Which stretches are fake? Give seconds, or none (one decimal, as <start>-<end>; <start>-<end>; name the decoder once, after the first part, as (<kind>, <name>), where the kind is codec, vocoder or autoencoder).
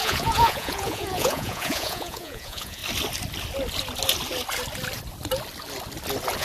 0.0-2.8 (vocoder, Vocos)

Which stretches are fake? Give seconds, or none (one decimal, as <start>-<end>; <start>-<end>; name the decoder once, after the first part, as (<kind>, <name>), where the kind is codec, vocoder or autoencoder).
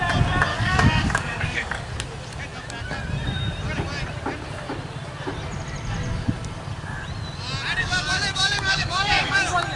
0.5-1.8 (codec, DAC); 7.8-9.4